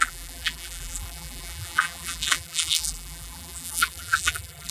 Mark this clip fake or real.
fake